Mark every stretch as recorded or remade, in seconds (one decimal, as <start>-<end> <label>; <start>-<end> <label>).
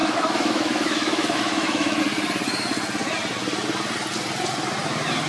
0.0-2.0 remade; 2.0-5.3 recorded